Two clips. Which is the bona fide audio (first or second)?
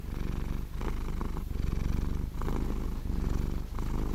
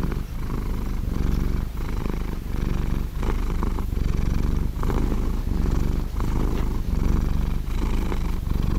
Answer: first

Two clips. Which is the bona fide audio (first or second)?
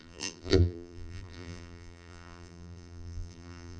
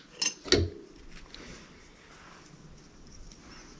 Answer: second